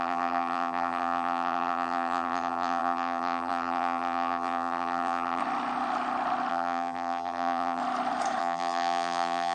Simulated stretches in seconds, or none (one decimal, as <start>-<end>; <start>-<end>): 0.0-5.4; 6.5-7.8; 8.4-9.5